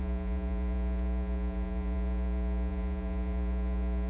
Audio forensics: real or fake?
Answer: fake